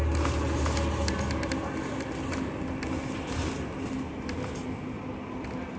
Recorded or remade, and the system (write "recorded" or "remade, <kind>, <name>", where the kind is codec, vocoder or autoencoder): recorded